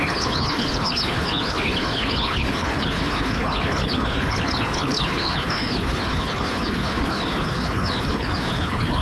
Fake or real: fake